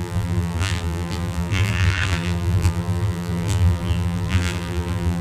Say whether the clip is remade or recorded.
remade